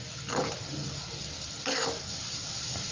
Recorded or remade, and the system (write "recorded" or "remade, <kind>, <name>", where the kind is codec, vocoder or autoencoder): recorded